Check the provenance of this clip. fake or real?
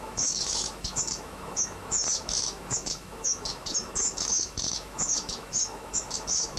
fake